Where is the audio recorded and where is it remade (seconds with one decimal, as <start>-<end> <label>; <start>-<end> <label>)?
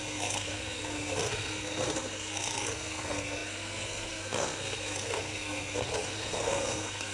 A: 0.0-7.1 remade